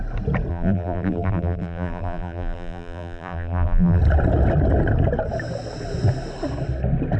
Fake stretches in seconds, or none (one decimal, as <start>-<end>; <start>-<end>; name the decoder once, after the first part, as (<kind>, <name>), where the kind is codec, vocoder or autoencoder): 0.5-4.0 (vocoder, BigVGAN v2)